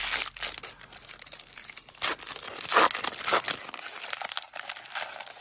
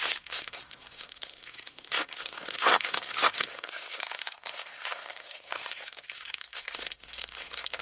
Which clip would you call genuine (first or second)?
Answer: first